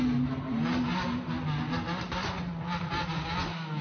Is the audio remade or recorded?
recorded